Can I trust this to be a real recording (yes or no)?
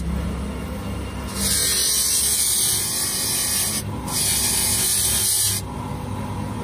yes